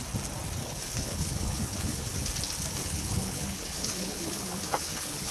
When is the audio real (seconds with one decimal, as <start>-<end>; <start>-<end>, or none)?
0.0-0.6; 2.3-2.8